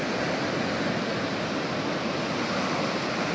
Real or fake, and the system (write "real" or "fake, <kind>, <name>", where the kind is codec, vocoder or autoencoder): real